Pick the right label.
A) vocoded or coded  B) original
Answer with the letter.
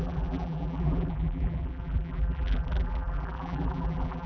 A